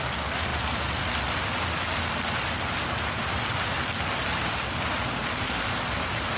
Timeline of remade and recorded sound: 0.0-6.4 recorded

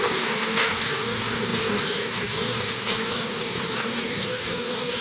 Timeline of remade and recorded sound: 0.0-5.0 remade